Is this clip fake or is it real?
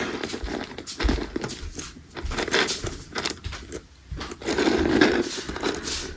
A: real